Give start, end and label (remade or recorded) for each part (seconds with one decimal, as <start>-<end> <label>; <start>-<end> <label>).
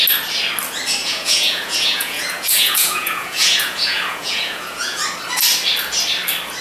0.0-1.0 recorded; 1.0-5.0 remade; 5.0-6.6 recorded